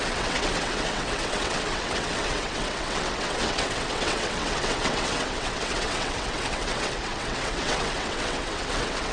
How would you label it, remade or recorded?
remade